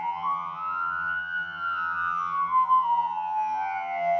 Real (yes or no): no